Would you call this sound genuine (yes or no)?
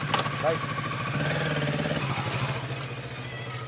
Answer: yes